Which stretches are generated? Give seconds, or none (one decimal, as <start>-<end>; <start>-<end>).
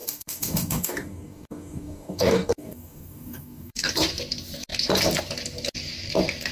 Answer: 0.0-3.9